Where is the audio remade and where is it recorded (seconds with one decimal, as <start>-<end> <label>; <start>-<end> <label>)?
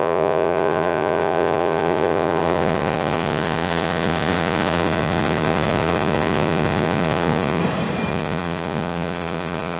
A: 0.0-7.6 remade; 7.6-8.1 recorded; 8.1-9.8 remade